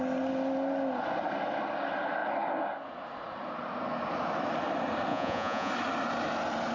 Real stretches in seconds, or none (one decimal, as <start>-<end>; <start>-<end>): 0.0-5.1; 5.7-6.7